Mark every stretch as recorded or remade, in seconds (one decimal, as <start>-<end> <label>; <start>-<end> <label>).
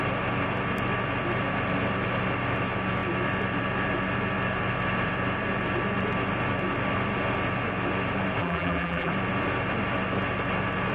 0.0-8.4 recorded; 8.4-9.1 remade; 9.1-10.9 recorded